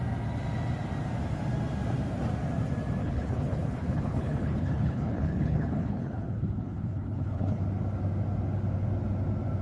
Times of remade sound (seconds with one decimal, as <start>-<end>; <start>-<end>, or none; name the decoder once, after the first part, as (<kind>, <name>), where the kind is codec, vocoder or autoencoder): 3.0-7.6 (codec, HILCodec)